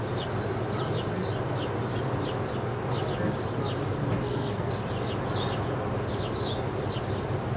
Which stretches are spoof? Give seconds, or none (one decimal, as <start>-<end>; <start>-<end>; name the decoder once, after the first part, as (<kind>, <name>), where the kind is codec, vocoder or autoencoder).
4.2-4.7 (codec, SNAC)